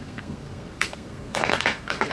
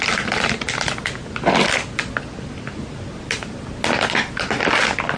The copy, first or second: first